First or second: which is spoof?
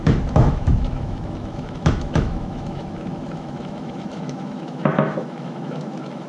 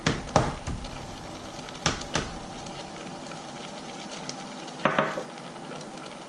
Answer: first